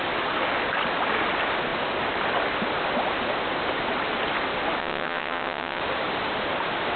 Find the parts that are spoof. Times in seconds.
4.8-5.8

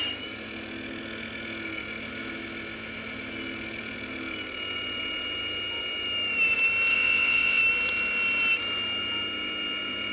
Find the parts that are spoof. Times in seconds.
6.9-7.6